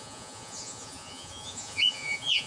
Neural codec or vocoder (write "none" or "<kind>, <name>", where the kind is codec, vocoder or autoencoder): vocoder, Vocos